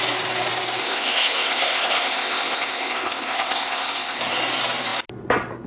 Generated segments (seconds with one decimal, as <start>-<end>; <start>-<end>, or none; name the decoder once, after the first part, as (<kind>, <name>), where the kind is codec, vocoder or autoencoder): 0.8-4.2 (codec, ZipCodec)